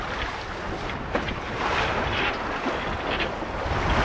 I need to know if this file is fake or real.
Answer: real